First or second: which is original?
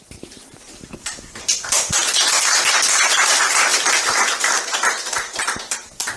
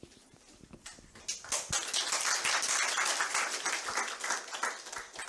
second